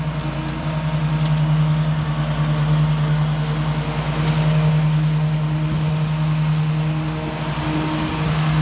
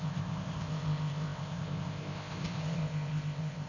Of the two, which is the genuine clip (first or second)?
first